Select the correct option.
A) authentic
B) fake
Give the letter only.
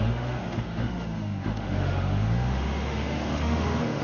B